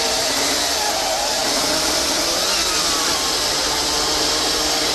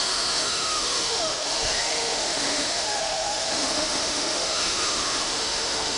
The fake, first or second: second